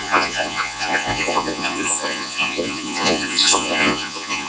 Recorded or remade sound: remade